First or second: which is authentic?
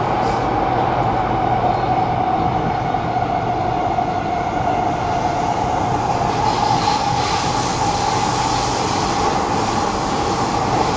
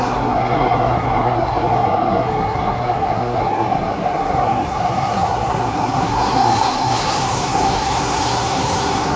first